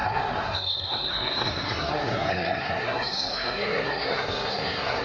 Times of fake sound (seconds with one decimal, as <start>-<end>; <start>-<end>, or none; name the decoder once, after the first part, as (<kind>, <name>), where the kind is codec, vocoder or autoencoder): 0.0-5.0 (codec, SNAC)